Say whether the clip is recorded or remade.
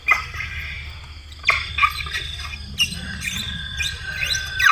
recorded